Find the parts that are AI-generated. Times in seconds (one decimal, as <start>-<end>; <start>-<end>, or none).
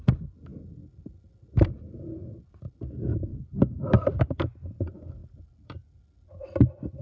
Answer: none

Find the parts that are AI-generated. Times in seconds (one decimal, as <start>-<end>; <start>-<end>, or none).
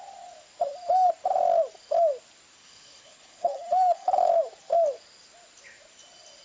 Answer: 2.6-4.3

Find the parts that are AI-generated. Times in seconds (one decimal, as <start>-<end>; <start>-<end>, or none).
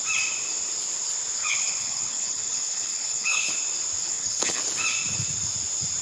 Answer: 1.4-3.5; 4.0-4.6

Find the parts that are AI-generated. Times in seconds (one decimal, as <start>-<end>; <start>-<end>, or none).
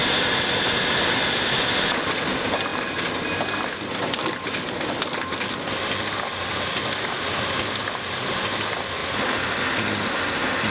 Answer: none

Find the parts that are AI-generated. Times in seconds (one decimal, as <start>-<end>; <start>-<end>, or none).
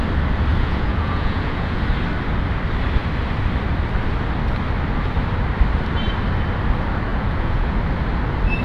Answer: 0.5-1.8; 7.1-7.8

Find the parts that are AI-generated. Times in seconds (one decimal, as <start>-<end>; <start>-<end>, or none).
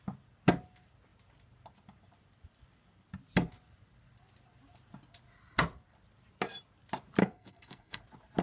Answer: 7.2-8.0